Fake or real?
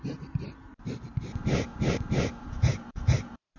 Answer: fake